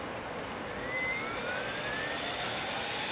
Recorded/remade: recorded